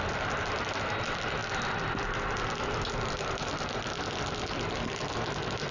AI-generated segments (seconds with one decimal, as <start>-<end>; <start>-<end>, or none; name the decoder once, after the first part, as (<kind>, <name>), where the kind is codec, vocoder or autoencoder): none